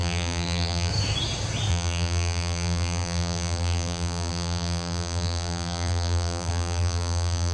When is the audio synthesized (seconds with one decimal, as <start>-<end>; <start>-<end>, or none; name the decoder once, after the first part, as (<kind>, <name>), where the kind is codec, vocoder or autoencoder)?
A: 0.0-0.9 (vocoder, BigVGAN v2); 1.7-7.5